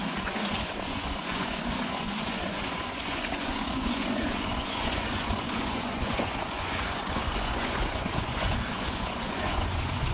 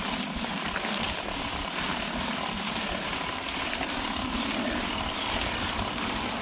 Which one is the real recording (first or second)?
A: second